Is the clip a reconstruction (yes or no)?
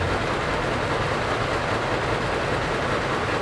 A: no